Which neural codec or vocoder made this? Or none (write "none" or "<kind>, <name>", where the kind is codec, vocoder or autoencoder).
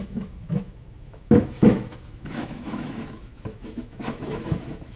autoencoder, DAC-VAE